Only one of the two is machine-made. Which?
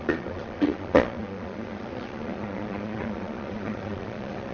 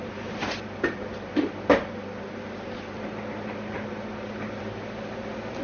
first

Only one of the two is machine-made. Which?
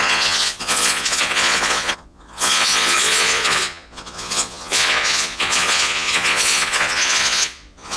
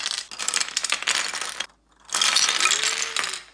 first